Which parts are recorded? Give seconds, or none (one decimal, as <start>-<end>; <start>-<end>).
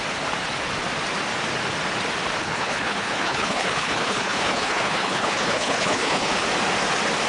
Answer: 0.0-2.4; 6.3-7.3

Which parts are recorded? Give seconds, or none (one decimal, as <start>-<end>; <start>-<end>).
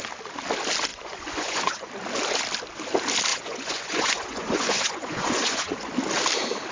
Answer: 0.0-0.9; 1.9-3.3; 5.9-6.7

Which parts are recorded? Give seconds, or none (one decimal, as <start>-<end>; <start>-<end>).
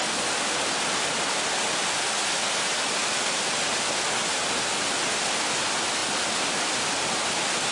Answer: 0.0-7.7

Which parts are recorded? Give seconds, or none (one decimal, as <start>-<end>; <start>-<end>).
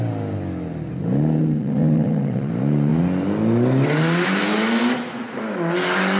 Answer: 0.0-1.4; 2.5-6.2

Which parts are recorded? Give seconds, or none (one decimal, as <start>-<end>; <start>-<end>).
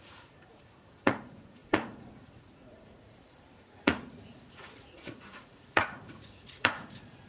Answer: none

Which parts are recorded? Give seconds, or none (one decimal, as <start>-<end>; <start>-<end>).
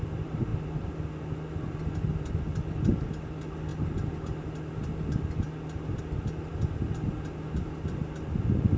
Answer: 0.0-0.5; 2.3-3.7; 6.0-8.8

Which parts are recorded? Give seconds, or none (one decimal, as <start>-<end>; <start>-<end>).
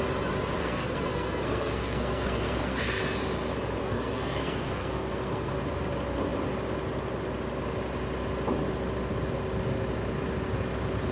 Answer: 0.0-0.6; 3.0-3.8; 5.5-11.1